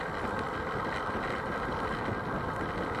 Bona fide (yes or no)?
yes